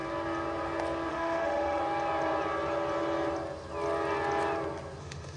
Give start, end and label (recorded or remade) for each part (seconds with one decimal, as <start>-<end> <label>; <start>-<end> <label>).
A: 0.0-1.1 recorded; 1.1-1.8 remade; 1.8-5.0 recorded; 5.0-5.4 remade